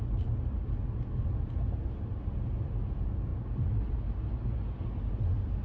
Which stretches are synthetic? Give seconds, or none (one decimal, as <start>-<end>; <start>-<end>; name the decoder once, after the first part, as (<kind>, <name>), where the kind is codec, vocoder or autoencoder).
none